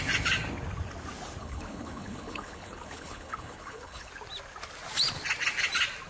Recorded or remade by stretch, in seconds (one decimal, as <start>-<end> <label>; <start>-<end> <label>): 0.0-1.4 recorded; 1.4-4.1 remade; 4.1-6.1 recorded